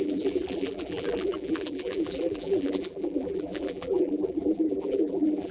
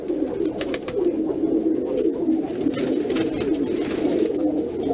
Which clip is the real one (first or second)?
second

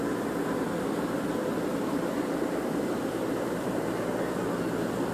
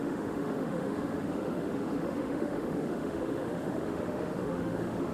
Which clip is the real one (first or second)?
first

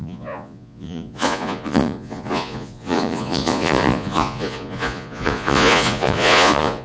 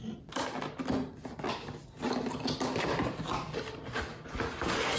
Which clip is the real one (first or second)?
second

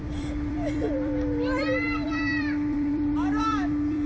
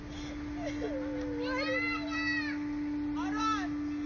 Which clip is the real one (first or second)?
second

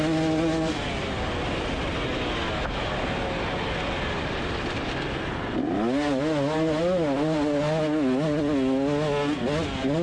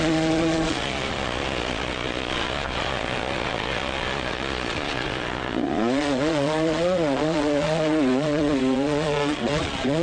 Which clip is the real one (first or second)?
first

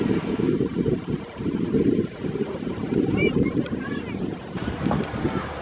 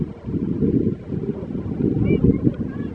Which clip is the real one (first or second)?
second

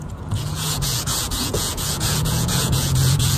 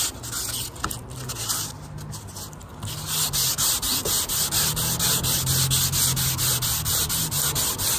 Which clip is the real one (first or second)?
second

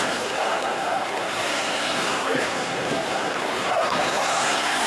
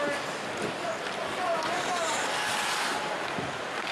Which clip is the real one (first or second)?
second